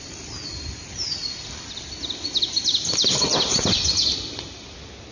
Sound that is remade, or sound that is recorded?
recorded